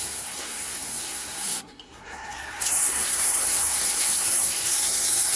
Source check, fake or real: fake